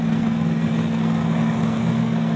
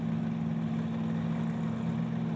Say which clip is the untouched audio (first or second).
second